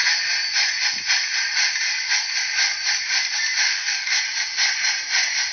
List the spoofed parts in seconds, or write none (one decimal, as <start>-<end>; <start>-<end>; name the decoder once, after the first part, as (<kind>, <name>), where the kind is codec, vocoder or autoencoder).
3.7-4.2 (codec, DAC)